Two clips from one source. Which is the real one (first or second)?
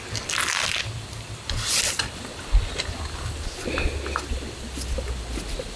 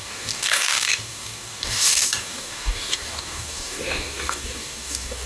first